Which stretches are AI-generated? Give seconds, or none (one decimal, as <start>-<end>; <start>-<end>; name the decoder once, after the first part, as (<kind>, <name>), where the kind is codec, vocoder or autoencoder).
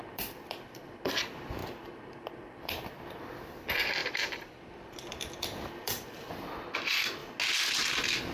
0.0-0.8 (vocoder, BigVGAN v2); 1.6-2.9; 4.0-6.3